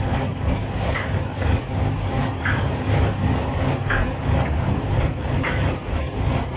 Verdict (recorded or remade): remade